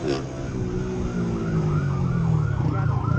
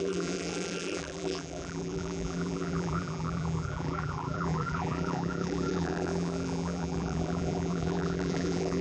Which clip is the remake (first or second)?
second